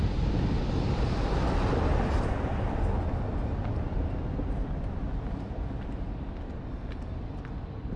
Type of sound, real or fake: real